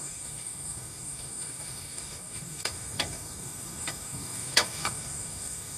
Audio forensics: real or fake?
fake